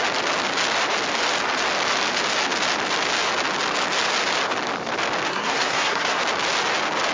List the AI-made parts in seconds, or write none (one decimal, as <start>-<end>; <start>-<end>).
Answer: 5.3-6.2

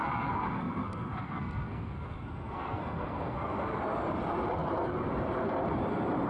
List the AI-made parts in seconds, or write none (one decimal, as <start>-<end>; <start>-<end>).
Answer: 0.0-3.8